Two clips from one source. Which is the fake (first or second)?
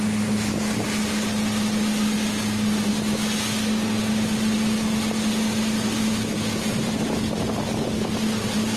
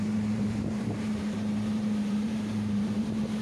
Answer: second